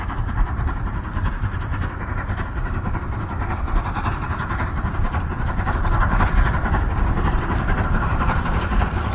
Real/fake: fake